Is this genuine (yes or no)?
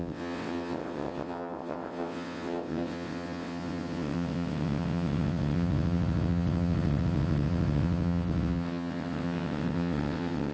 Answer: no